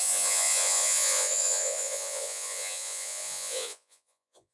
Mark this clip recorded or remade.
remade